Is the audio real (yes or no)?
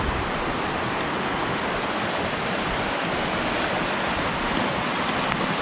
yes